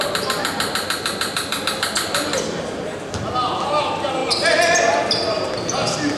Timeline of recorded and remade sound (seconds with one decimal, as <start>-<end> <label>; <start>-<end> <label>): 0.0-6.2 recorded